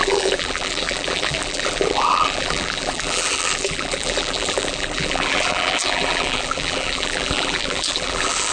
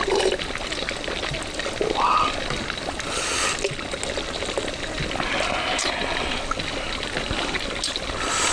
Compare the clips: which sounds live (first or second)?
second